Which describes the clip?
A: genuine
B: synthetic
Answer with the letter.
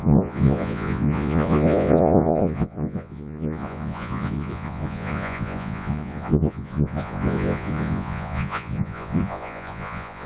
B